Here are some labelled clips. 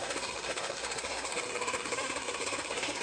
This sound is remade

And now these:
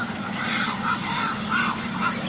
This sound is recorded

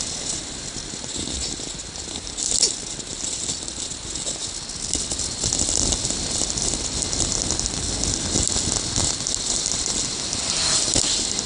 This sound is recorded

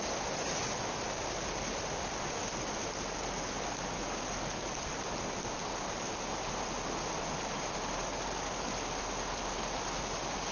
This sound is recorded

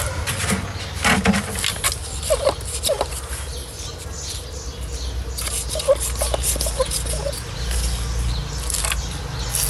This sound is recorded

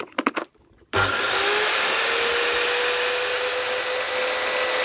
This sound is recorded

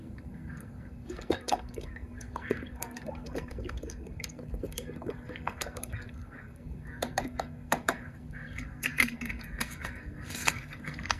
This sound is remade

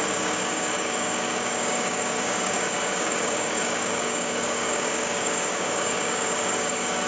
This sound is remade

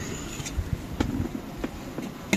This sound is recorded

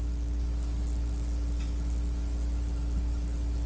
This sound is recorded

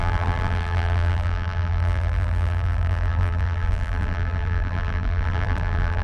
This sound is remade